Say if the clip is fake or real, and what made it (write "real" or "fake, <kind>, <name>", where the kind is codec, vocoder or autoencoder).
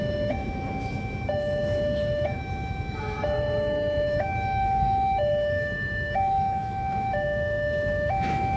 fake, autoencoder, DAC-VAE